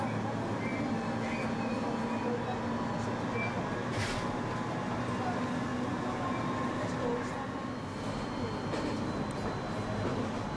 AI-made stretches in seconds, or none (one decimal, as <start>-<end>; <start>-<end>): none